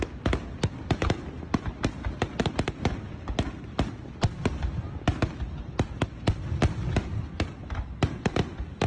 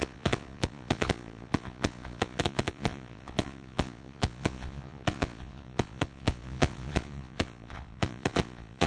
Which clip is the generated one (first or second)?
second